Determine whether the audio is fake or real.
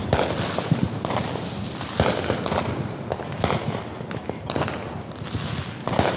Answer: real